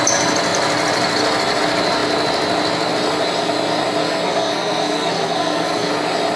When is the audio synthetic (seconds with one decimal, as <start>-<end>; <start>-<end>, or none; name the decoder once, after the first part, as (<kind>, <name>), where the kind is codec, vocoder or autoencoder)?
4.0-5.9 (codec, SNAC)